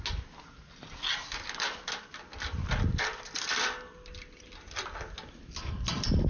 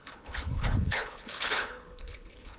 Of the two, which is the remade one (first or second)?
second